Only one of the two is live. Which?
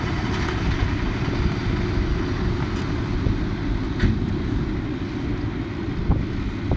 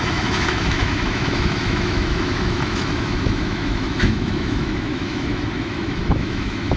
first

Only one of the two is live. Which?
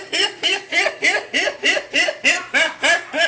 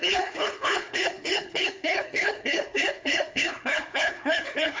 first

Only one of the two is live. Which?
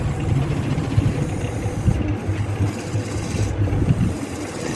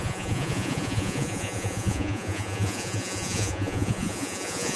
first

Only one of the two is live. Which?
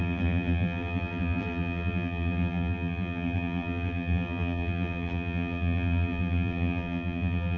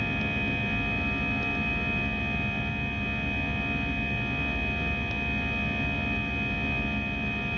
second